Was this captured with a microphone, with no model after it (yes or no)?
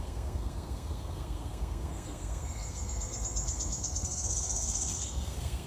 no